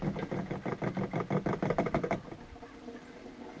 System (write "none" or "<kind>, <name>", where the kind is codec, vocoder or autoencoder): none